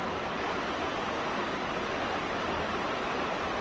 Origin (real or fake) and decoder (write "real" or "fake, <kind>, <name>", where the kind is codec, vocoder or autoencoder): fake, vocoder, BigVGAN v2